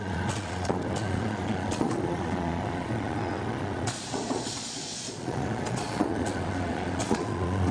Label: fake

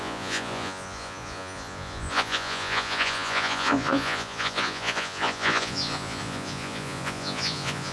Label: fake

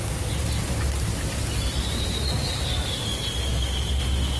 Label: real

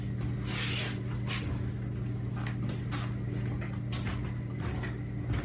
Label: real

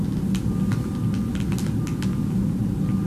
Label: real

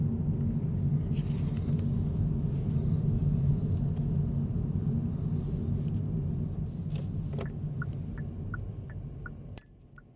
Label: real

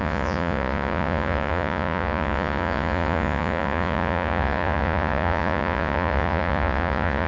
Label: fake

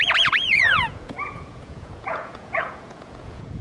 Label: fake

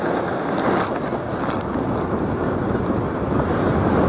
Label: real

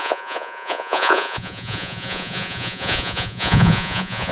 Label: fake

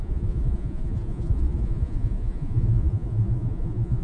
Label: fake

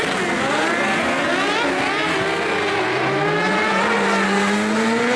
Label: real